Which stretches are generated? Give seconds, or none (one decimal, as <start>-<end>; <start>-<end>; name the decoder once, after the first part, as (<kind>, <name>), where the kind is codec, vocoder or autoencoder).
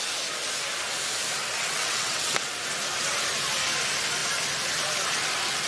1.6-2.5 (vocoder, WaveNeXt)